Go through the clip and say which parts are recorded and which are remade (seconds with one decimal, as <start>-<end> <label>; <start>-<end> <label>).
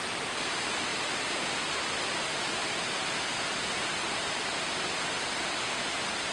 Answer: 0.0-6.3 recorded